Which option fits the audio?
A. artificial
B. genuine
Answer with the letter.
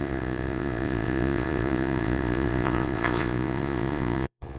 A